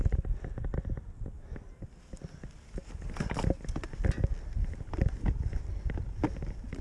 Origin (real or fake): real